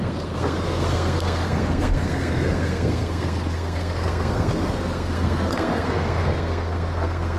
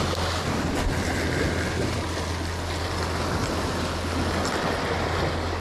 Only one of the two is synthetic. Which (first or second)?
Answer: first